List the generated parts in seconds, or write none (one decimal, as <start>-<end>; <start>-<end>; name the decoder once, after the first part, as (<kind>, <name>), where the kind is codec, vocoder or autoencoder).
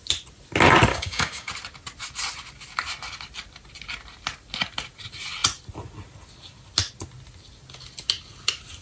0.9-1.5 (codec, DAC)